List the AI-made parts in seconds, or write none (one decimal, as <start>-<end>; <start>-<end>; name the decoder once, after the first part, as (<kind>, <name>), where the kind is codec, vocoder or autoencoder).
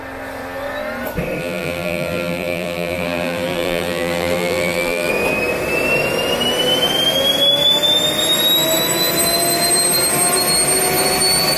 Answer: 1.4-5.1 (vocoder, BigVGAN v2)